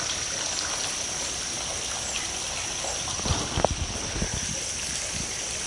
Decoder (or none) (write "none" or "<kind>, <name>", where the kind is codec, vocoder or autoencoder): none